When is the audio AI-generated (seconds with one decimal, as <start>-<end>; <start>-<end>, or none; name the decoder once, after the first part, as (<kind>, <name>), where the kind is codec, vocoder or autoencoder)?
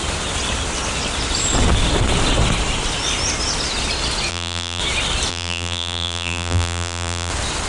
4.3-4.8 (vocoder, BigVGAN v2); 5.3-7.3